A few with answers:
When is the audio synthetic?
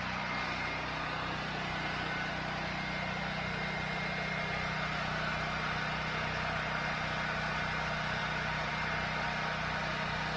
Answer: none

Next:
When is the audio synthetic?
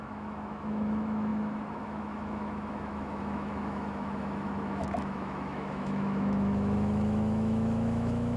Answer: 0.0-8.4 (autoencoder, DAC-VAE)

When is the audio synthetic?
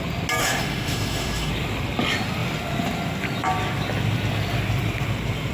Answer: 0.4-1.5 (autoencoder, DAC-VAE)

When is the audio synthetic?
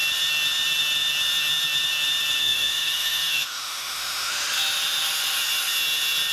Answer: 2.4-4.3 (autoencoder, DAC-VAE)